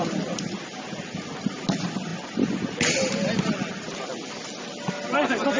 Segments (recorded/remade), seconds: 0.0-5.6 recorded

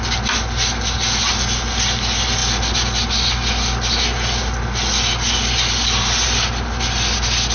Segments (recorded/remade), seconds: 0.0-7.5 recorded